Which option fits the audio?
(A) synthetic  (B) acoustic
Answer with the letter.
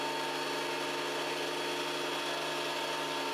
B